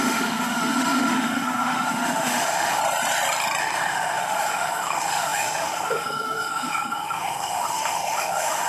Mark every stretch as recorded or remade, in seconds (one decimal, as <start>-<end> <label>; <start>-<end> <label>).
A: 0.0-2.8 remade; 2.8-3.6 recorded; 3.6-8.7 remade